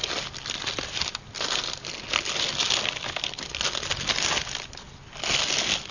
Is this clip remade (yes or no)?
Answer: no